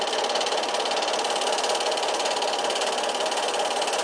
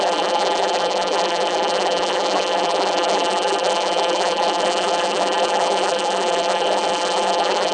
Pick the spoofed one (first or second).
second